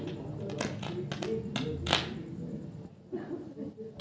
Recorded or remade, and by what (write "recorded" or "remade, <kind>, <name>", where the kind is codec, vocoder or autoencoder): recorded